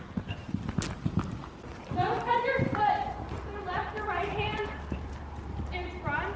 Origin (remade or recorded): recorded